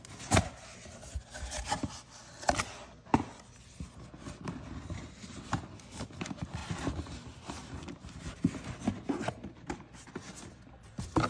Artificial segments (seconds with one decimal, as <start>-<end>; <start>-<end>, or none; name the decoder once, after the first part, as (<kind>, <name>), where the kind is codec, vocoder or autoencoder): none